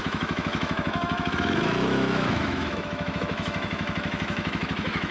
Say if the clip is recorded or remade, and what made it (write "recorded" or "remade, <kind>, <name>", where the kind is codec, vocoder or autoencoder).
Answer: remade, autoencoder, DAC-VAE